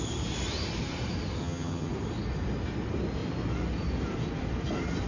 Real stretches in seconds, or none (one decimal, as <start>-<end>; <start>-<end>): 0.0-1.4; 1.9-5.1